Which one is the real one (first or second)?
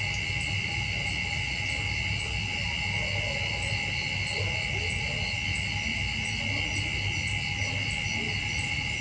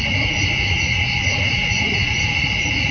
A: first